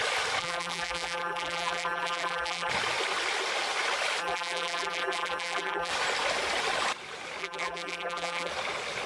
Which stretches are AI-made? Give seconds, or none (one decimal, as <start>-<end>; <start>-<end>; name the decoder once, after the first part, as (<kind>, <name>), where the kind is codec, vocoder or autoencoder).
0.4-2.7 (vocoder, BigVGAN v2); 4.2-5.9; 7.4-8.5